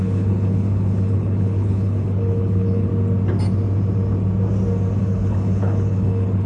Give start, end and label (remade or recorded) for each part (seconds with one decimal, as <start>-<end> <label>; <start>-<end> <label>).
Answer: 0.0-2.9 remade; 2.9-5.0 recorded; 5.0-6.5 remade